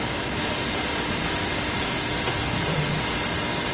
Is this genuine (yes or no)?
yes